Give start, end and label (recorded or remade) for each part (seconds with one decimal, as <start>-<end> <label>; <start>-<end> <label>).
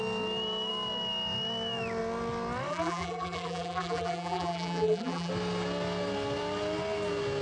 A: 0.0-2.7 recorded; 2.7-5.3 remade; 5.3-7.4 recorded